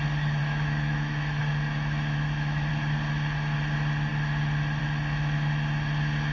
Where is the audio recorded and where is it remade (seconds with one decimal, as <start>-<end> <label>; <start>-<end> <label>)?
0.0-0.4 recorded; 0.4-2.7 remade; 2.7-6.3 recorded